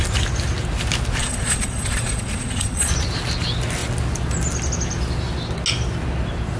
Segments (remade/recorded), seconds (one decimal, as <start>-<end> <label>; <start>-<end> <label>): 0.0-1.2 recorded; 1.2-2.9 remade; 2.9-6.6 recorded